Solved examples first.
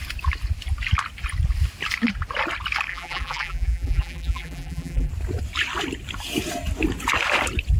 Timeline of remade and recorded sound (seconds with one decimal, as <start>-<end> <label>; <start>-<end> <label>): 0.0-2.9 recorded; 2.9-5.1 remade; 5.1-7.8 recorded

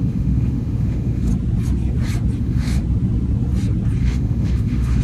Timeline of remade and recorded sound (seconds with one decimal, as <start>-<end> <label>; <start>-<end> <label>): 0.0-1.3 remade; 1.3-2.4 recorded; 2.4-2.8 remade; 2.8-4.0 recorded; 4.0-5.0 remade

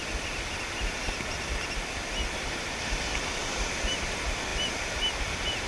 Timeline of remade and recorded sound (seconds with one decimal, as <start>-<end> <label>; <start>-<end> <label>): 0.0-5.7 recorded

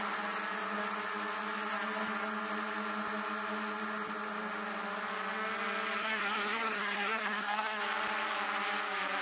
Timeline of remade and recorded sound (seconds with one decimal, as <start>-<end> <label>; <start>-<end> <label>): 0.0-6.0 recorded; 6.0-7.8 remade; 7.8-9.2 recorded